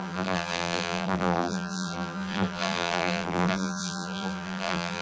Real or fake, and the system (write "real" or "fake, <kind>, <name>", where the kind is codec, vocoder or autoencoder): fake, vocoder, BigVGAN v2